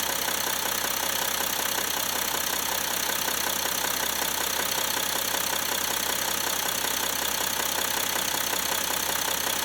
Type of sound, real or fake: real